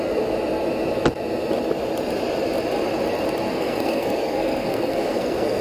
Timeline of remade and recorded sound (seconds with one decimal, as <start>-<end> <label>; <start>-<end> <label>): 0.0-3.5 recorded; 3.5-5.6 remade